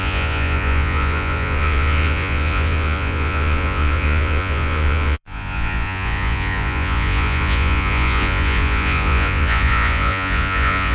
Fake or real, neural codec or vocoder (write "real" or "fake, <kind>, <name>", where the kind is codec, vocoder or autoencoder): fake, vocoder, Vocos